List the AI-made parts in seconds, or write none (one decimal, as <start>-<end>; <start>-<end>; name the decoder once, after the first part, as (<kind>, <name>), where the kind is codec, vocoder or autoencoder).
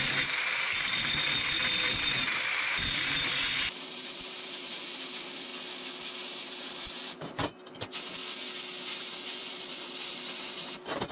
0.0-5.5 (vocoder, BigVGAN v2); 6.4-8.2; 9.0-11.1